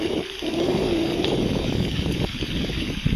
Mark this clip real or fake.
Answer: fake